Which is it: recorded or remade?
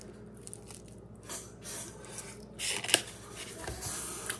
recorded